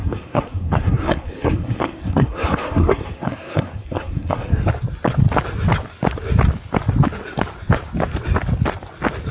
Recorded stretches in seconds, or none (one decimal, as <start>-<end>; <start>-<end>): 4.7-9.3